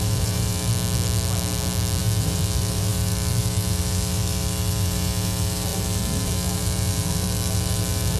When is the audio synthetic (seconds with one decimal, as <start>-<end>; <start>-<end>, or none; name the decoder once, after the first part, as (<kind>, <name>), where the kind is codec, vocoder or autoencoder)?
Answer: 0.0-0.7 (autoencoder, DAC-VAE); 2.0-8.2